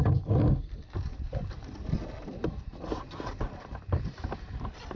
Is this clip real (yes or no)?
no